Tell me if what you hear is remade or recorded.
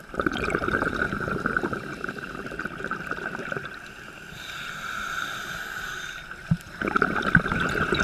remade